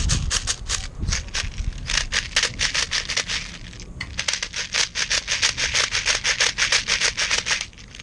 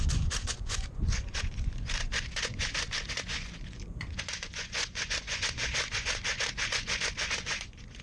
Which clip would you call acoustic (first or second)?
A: first